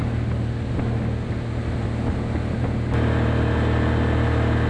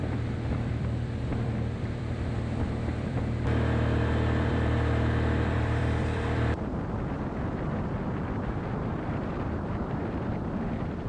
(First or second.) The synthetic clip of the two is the second